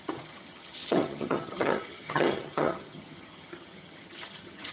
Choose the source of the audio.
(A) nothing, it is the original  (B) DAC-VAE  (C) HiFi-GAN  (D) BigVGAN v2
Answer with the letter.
C